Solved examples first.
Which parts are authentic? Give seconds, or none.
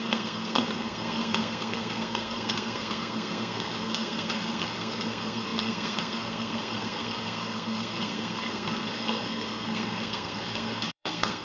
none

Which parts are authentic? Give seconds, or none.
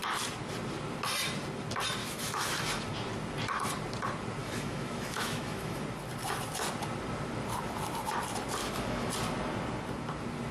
0.0-2.0; 2.9-4.4; 5.8-8.6; 9.1-10.5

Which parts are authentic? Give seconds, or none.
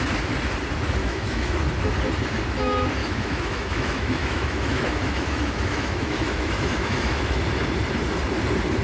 0.0-1.0; 1.6-3.0; 7.4-8.8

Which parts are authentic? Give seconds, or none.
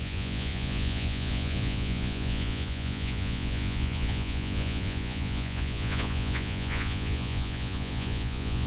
none